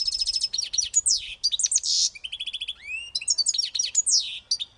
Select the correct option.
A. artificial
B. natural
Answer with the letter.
B